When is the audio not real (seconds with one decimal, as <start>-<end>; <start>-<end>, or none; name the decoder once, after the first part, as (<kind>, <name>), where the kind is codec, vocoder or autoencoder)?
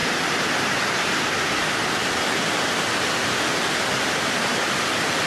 0.0-0.7 (vocoder, BigVGAN v2)